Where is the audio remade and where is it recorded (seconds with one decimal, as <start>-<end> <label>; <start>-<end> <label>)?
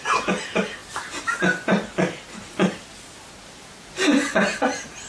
0.0-5.1 recorded